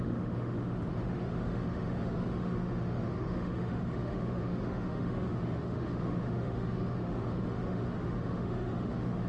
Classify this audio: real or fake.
fake